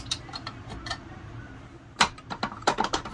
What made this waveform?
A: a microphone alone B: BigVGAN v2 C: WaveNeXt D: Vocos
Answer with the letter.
A